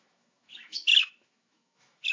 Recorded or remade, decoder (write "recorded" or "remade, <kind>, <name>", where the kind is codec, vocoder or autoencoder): remade, autoencoder, DAC-VAE